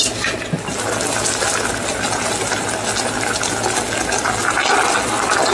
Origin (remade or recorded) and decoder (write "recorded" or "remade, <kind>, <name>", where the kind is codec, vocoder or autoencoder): recorded